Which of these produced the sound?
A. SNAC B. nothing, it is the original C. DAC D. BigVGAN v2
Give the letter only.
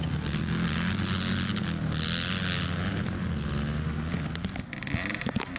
B